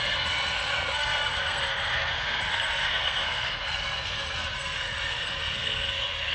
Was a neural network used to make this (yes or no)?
yes